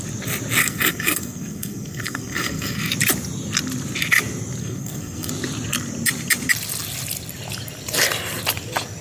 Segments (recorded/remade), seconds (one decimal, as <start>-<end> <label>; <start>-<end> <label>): 0.0-0.6 recorded; 0.6-2.9 remade; 2.9-4.6 recorded; 4.6-5.3 remade; 5.3-9.0 recorded